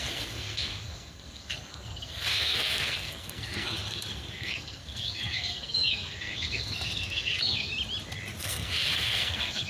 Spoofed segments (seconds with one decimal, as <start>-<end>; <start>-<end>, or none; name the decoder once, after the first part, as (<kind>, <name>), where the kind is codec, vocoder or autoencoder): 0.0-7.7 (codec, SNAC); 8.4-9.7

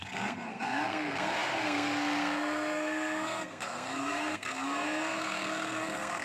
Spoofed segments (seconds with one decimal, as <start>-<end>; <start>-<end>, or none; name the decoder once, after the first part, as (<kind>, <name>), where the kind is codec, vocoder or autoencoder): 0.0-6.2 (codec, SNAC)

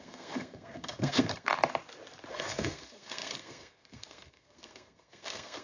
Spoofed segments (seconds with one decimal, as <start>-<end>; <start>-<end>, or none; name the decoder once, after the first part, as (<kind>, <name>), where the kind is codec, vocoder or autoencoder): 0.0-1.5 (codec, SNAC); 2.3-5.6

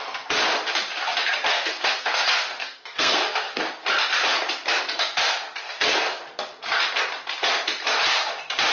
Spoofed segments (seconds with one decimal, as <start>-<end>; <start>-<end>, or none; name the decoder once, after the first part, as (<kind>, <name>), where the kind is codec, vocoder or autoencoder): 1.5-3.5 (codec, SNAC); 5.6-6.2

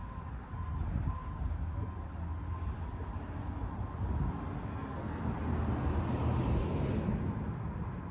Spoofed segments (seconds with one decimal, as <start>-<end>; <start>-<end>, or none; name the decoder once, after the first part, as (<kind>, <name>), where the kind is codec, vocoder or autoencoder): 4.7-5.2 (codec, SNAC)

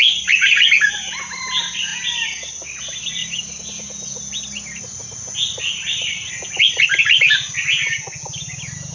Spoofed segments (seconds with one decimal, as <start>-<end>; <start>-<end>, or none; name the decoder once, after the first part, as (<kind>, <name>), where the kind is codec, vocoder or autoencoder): none

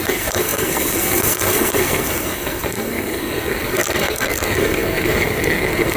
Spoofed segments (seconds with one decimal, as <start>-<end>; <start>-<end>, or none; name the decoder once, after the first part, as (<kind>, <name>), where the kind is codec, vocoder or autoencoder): 0.0-6.0 (codec, SNAC)